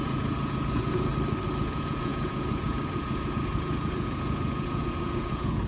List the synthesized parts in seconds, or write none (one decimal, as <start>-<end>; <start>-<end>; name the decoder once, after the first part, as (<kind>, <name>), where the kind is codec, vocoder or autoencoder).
0.0-1.1 (vocoder, Vocos); 1.6-5.7